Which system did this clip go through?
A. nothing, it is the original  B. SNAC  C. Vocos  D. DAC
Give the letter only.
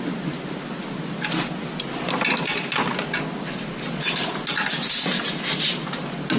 A